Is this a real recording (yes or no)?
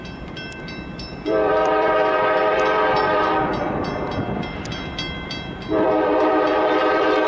no